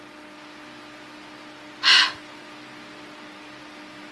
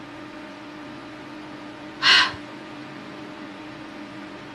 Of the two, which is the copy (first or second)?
second